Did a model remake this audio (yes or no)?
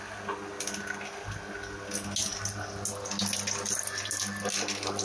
no